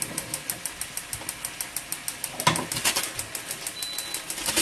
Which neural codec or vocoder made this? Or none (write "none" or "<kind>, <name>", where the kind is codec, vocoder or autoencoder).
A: none